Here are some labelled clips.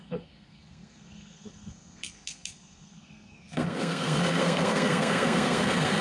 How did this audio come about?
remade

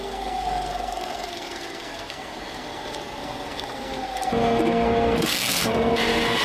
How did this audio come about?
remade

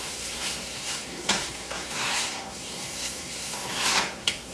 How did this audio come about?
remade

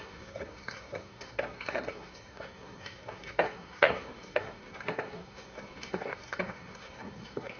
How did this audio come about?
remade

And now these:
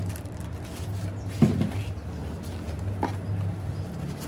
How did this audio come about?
recorded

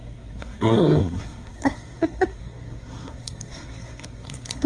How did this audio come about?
remade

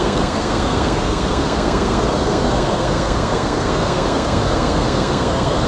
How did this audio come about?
remade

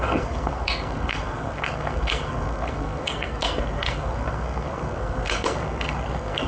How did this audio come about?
remade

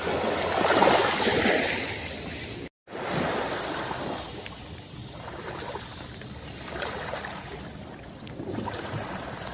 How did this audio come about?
recorded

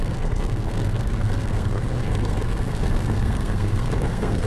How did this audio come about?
remade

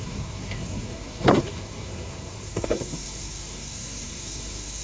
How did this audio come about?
remade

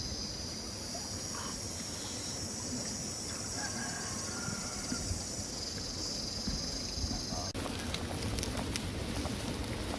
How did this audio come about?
recorded